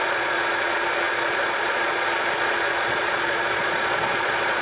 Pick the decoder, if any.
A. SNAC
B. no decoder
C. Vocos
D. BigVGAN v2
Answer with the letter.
C